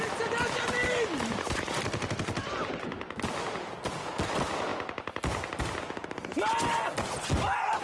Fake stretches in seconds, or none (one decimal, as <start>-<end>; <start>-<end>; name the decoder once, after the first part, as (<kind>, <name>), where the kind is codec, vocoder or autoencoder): none